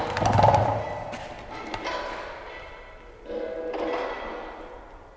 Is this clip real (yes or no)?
yes